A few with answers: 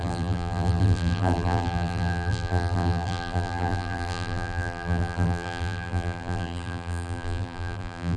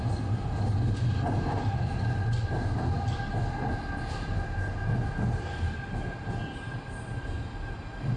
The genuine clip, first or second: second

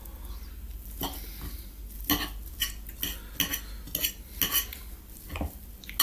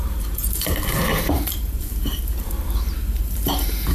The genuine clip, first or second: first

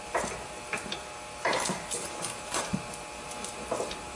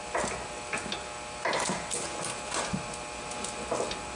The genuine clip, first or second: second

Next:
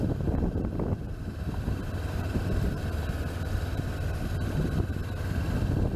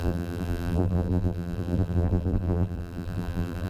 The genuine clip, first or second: first